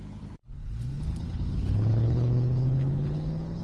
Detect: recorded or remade remade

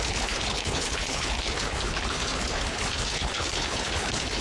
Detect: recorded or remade remade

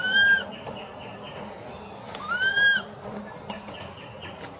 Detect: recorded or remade recorded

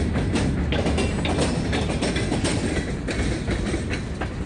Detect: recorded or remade recorded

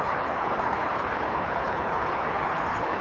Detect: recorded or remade remade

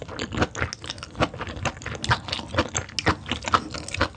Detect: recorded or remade recorded